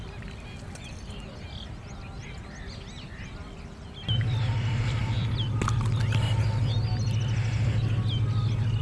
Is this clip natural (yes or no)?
yes